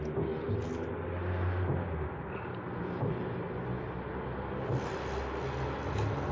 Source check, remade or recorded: recorded